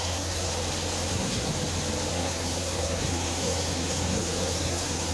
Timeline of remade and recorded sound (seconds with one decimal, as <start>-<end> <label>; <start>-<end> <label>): 0.0-0.5 remade; 0.5-1.1 recorded; 1.1-1.5 remade; 1.5-2.1 recorded; 2.1-5.1 remade